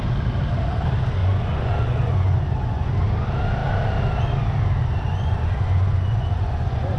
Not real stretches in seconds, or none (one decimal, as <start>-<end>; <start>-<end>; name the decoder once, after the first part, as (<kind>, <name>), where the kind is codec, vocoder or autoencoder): 1.2-2.9 (vocoder, Vocos); 5.1-7.0